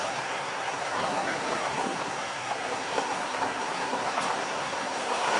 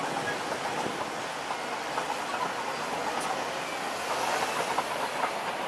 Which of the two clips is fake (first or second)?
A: first